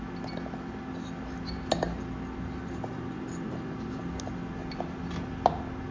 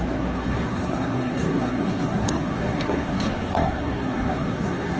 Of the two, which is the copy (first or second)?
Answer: second